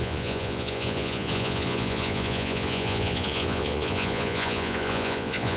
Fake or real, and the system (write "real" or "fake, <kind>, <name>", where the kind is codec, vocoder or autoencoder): fake, vocoder, Vocos